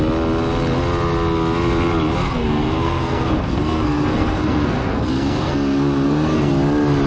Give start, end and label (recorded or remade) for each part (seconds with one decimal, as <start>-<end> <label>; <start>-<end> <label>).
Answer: 0.0-2.2 recorded; 2.2-6.5 remade; 6.5-7.1 recorded